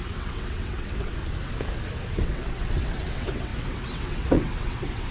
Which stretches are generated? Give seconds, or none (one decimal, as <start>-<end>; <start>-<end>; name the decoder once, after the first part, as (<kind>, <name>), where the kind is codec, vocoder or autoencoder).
0.0-1.2 (vocoder, WaveNeXt); 2.1-5.1